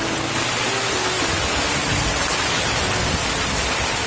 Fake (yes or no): no